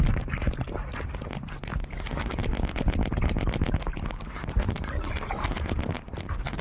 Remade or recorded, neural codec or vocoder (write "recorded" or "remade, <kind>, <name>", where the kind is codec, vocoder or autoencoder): recorded